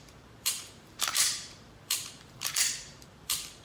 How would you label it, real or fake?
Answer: fake